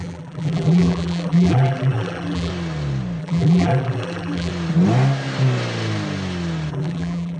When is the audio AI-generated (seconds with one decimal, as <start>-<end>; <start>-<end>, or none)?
0.0-2.5; 3.2-4.5; 6.7-7.4